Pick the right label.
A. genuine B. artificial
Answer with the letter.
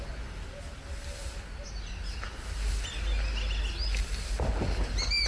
A